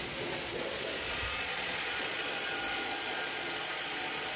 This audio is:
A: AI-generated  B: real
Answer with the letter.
A